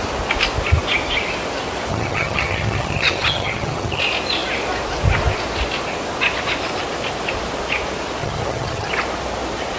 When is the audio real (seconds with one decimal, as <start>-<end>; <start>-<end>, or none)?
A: 0.0-1.9; 4.0-8.2; 8.9-9.8